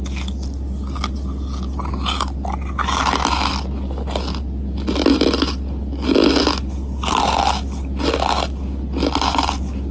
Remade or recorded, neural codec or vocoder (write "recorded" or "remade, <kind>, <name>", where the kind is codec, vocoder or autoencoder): recorded